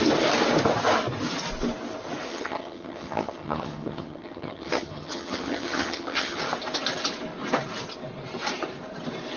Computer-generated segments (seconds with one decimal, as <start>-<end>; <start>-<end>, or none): 2.3-6.4